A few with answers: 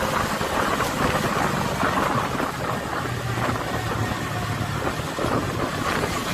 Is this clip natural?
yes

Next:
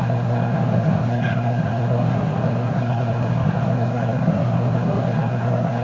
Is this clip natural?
no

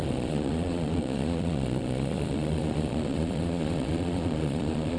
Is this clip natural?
no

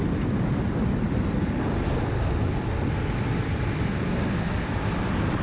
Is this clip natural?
yes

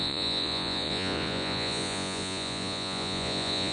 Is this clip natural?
no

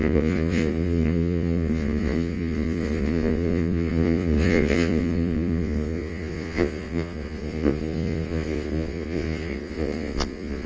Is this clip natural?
no